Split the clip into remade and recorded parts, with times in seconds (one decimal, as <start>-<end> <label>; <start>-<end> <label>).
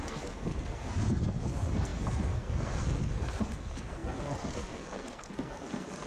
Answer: 0.0-6.1 remade